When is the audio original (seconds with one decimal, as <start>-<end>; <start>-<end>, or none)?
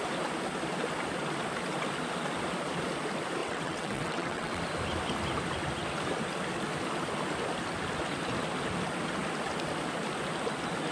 0.0-3.4; 4.6-10.9